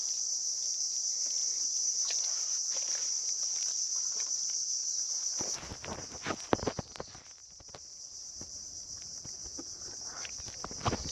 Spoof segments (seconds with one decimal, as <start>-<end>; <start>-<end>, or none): 0.0-4.8; 8.0-9.4; 10.0-11.1